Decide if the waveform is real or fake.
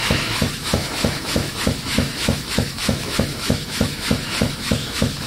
fake